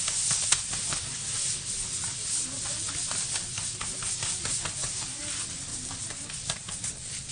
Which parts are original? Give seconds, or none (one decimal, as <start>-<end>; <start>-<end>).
0.0-7.3